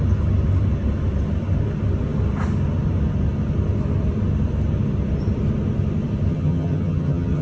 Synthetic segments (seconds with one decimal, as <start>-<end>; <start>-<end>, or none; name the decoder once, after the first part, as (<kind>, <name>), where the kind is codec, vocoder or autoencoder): 6.3-7.4 (vocoder, HiFi-GAN)